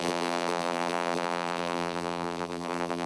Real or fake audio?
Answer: fake